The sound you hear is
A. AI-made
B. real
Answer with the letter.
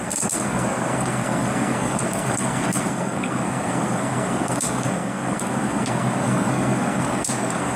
A